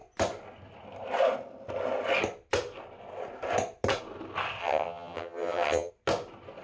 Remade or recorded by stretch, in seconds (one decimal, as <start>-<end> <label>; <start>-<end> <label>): 0.0-4.6 recorded; 4.6-5.9 remade; 5.9-6.6 recorded